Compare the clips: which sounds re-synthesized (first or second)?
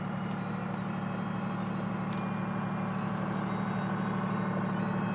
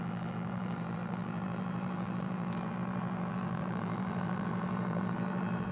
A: second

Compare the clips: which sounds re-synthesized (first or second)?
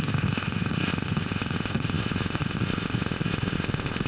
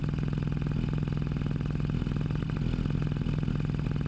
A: first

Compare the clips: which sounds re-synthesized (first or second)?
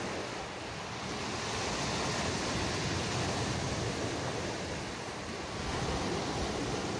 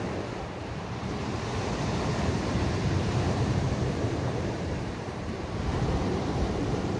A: second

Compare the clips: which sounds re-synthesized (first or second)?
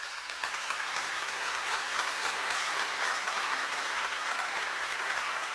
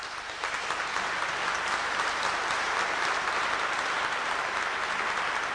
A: first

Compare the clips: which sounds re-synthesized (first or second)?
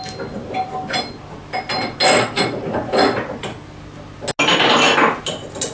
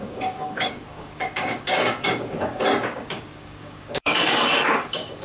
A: second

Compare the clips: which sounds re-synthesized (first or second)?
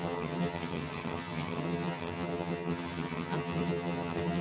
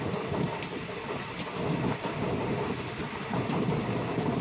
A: first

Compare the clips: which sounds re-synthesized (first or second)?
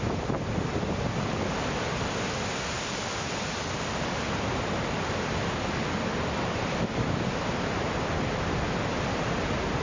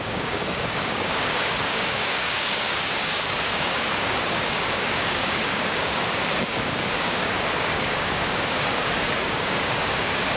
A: second